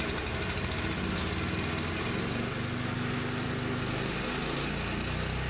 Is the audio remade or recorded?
recorded